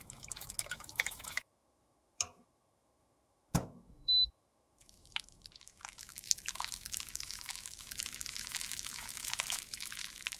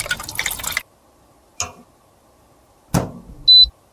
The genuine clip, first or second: second